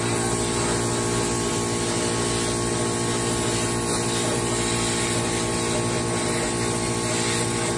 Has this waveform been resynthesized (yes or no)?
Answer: no